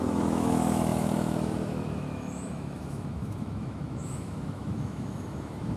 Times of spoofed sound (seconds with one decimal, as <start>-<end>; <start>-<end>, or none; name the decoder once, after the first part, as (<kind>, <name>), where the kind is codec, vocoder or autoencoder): 0.0-5.8 (autoencoder, DAC-VAE)